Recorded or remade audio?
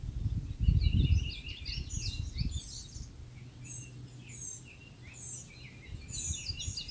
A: recorded